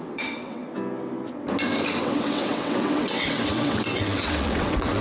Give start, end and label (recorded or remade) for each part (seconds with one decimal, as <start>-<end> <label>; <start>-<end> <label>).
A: 0.0-0.6 remade; 0.6-2.0 recorded; 2.0-5.0 remade